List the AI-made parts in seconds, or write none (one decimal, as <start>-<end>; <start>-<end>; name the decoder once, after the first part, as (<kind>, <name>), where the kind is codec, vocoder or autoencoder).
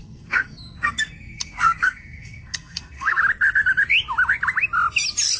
0.0-3.2 (codec, SNAC)